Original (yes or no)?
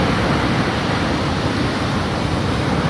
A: yes